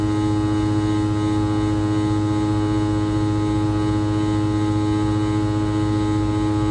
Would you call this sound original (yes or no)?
yes